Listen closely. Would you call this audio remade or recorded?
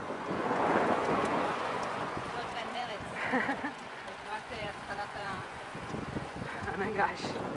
remade